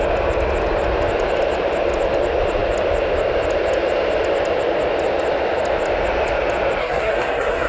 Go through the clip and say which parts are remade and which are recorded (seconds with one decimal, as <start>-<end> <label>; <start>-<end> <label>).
0.0-6.8 recorded; 6.8-7.7 remade